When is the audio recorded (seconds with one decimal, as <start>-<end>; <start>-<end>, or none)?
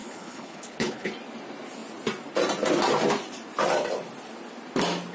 1.1-5.1